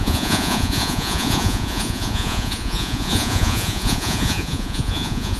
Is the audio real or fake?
fake